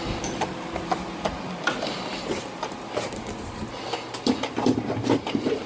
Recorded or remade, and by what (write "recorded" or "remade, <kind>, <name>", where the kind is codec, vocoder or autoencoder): recorded